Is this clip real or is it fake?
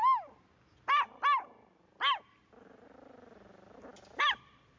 real